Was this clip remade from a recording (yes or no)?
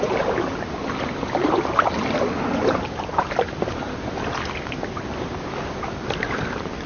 no